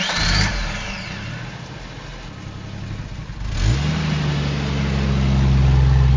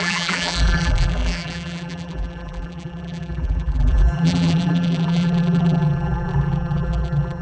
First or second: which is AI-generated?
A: second